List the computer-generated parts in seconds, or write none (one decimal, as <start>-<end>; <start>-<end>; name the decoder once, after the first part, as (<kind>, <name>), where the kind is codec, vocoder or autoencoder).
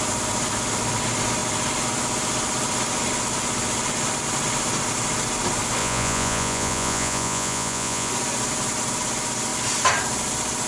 5.8-8.1 (vocoder, Vocos)